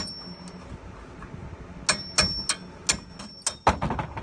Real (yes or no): yes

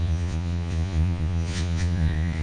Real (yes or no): no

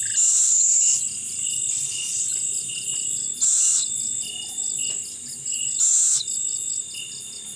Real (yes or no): yes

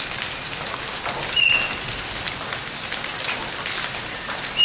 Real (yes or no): yes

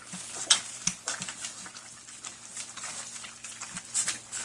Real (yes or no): yes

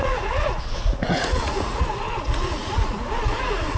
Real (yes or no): no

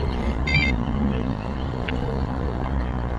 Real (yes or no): no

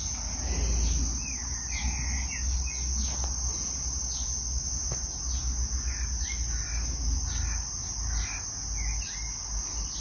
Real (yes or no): yes